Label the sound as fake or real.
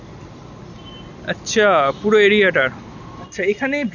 real